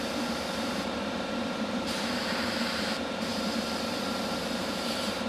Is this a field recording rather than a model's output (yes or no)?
no